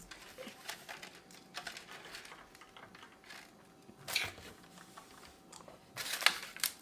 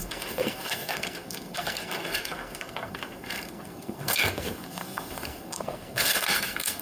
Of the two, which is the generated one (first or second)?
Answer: second